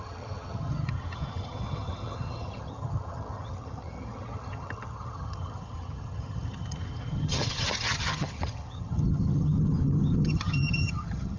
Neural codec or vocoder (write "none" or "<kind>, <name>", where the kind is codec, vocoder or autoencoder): vocoder, HiFi-GAN